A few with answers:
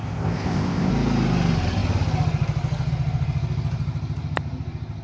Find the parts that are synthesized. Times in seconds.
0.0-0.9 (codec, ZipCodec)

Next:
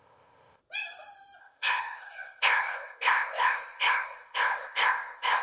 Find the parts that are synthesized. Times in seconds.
0.0-0.6 (codec, ZipCodec); 1.4-5.4

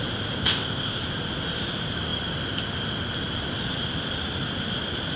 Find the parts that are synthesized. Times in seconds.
0.4-1.0 (codec, ZipCodec)

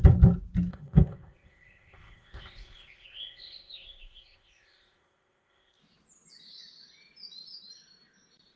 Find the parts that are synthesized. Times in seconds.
0.7-5.8 (codec, ZipCodec)

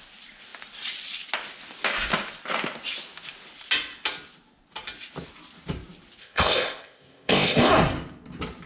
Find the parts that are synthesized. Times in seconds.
6.2-7.7 (codec, ZipCodec)